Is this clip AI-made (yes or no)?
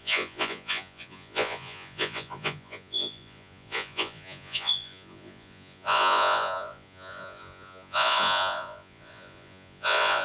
yes